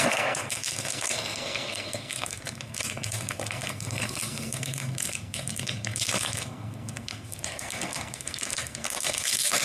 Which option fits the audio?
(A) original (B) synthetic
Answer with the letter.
B